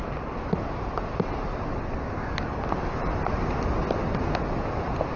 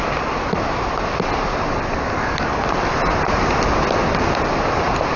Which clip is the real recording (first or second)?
first